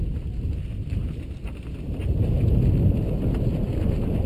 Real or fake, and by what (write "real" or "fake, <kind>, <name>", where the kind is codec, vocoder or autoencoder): real